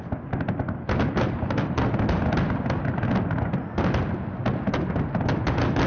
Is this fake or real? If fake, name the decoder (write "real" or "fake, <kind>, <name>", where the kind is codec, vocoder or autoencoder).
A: real